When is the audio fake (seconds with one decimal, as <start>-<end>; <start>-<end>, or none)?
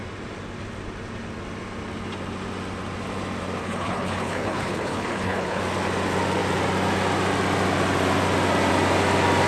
3.6-5.6